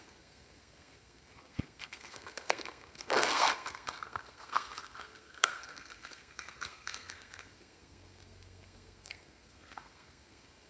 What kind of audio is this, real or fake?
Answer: fake